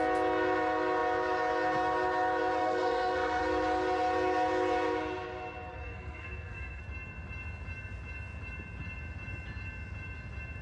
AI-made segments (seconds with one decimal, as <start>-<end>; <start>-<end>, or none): 2.6-3.4; 5.7-6.8